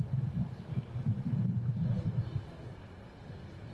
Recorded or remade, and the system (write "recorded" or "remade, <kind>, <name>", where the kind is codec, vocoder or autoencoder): recorded